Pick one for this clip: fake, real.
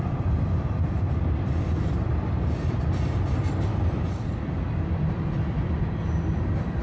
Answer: fake